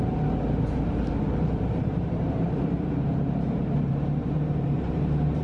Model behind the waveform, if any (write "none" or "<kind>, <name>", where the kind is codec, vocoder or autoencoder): vocoder, BigVGAN v2